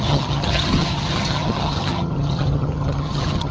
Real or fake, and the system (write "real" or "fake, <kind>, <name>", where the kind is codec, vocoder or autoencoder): fake, vocoder, HiFi-GAN